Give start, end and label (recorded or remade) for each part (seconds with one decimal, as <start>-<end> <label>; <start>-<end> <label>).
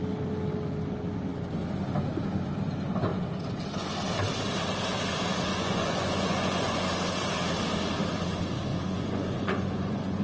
0.0-5.5 recorded; 5.5-6.9 remade; 6.9-8.7 recorded; 8.7-10.2 remade